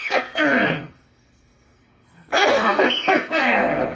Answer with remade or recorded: remade